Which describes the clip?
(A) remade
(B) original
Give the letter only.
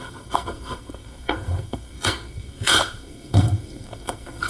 A